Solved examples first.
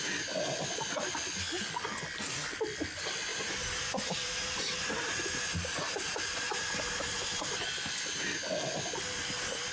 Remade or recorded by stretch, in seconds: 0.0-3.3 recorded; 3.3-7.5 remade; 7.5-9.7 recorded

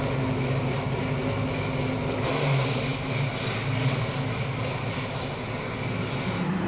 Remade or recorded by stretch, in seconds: 0.0-6.7 recorded

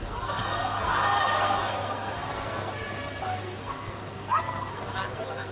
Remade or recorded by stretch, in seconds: 0.0-5.5 remade

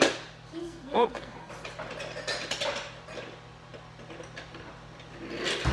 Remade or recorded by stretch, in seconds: 0.0-0.6 recorded; 0.6-1.5 remade; 1.5-5.7 recorded

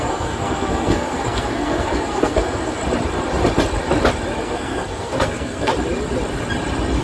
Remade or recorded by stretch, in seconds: 0.0-2.8 remade; 2.8-4.4 recorded; 4.4-5.7 remade; 5.7-7.0 recorded